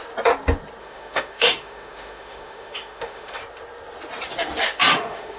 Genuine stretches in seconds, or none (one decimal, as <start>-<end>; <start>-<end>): 0.0-0.8; 3.4-4.9